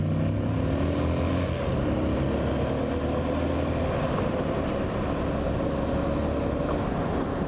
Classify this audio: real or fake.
real